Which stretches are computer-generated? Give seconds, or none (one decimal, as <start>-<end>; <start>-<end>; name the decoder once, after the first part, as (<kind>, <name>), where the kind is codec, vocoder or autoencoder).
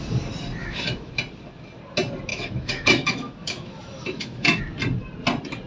0.6-1.1 (autoencoder, DAC-VAE); 2.3-4.6